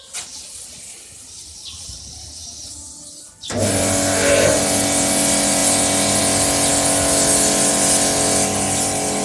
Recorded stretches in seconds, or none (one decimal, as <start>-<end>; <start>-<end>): 0.0-9.2